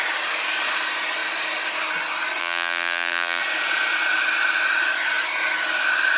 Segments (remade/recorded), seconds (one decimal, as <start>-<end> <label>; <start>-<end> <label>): 0.0-2.4 recorded; 2.4-3.4 remade; 3.4-6.2 recorded